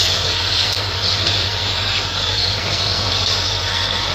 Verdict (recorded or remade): remade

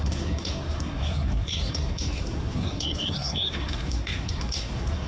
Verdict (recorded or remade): remade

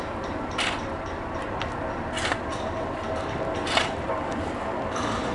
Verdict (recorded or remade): remade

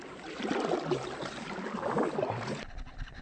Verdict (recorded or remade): recorded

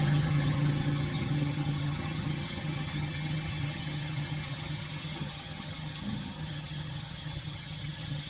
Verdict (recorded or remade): remade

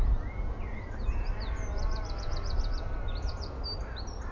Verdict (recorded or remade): recorded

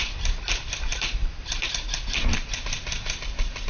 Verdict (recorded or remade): recorded